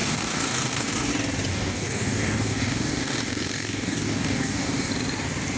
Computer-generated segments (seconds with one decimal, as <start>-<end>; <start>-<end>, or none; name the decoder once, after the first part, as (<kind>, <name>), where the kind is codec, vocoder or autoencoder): 0.0-1.1 (codec, DAC); 1.5-4.9